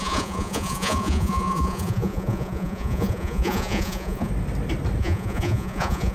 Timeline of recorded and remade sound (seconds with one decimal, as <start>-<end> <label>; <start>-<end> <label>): 0.0-4.3 remade; 4.3-5.0 recorded; 5.0-6.1 remade